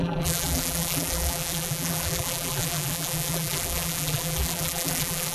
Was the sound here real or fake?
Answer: fake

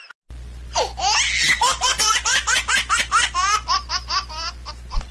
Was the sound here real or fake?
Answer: real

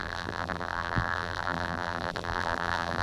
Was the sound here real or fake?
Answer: fake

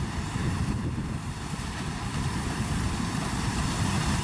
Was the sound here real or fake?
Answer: fake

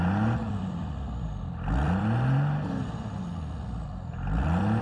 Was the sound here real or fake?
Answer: fake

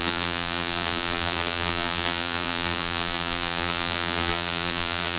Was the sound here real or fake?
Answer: fake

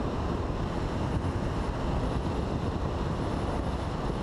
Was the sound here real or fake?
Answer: real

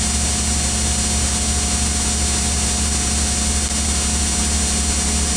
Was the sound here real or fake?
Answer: real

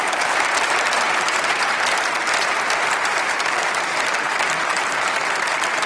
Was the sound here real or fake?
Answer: fake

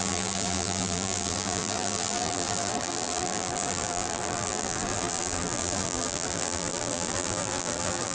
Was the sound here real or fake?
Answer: fake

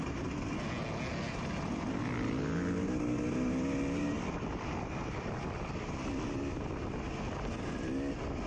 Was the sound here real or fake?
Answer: real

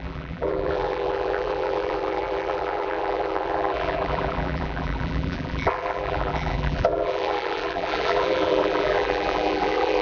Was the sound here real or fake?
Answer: fake